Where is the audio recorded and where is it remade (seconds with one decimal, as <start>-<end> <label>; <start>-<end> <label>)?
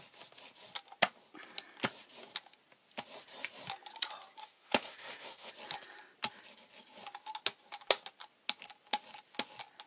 0.0-4.4 recorded; 4.4-5.5 remade; 5.5-9.9 recorded